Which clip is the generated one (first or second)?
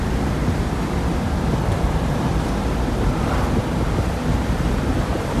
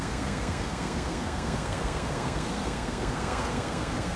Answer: second